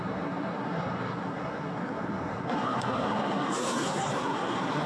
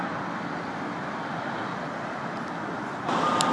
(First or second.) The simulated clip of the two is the first